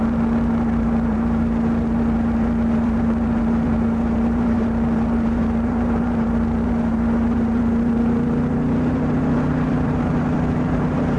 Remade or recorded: remade